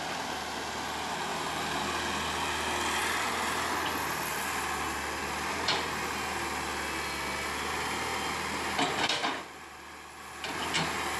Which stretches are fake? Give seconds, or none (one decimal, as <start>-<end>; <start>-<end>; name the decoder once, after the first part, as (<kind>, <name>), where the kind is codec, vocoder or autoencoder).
none